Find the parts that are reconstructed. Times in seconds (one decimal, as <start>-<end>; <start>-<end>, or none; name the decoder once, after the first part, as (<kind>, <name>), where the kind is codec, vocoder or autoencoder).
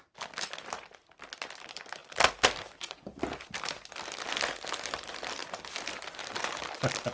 none